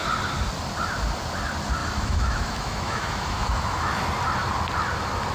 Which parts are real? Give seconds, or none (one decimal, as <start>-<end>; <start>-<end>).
0.0-1.8; 4.0-5.3